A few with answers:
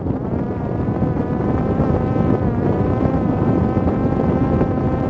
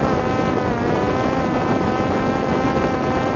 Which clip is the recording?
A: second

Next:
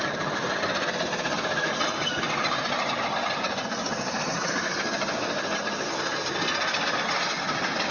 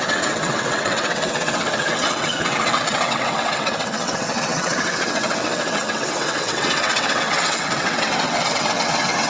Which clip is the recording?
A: first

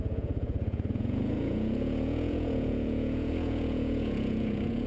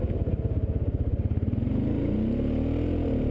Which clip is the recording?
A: second